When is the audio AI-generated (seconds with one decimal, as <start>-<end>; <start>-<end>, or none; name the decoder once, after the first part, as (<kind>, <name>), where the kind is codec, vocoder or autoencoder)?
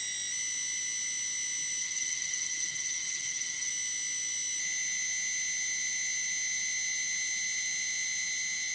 1.8-3.7 (vocoder, HiFi-GAN)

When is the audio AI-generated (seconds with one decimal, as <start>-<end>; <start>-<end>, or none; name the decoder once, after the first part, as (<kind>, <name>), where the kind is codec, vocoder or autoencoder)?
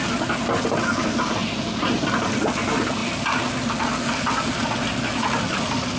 none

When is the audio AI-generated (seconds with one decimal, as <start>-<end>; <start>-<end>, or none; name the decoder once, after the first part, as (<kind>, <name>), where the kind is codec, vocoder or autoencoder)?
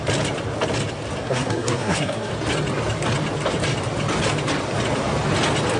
1.2-2.3 (codec, SNAC)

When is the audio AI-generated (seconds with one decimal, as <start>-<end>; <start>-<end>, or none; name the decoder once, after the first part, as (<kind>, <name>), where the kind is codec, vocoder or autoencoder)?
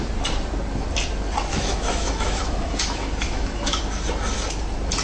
1.5-3.8 (autoencoder, DAC-VAE)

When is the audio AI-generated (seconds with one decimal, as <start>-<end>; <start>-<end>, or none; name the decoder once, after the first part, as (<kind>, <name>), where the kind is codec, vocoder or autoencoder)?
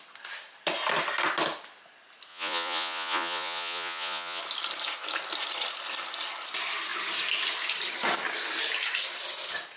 2.3-4.4 (vocoder, Vocos)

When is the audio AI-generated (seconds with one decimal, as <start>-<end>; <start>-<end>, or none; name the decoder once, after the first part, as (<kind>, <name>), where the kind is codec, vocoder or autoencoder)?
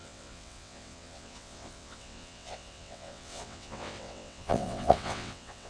0.0-5.7 (vocoder, WaveNeXt)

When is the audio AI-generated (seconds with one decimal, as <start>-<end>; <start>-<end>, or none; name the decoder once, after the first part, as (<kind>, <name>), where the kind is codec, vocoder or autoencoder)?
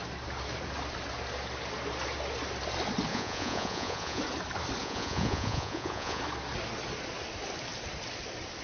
3.1-4.2 (vocoder, Vocos); 4.8-6.2